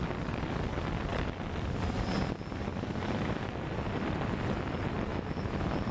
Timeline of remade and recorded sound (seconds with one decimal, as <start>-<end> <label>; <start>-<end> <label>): 0.0-5.1 recorded; 5.1-5.9 remade